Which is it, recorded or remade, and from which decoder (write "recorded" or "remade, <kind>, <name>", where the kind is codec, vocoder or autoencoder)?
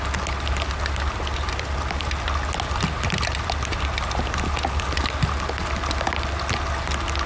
recorded